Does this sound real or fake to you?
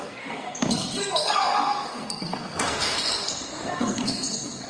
fake